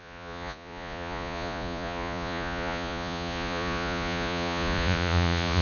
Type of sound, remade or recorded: remade